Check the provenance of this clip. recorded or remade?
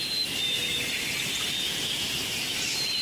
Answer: recorded